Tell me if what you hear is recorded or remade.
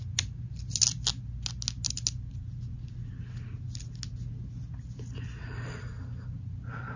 recorded